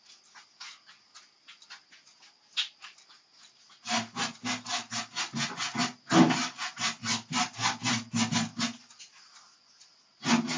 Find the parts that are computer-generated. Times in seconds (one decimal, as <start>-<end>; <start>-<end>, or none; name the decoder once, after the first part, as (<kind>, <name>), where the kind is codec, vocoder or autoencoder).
none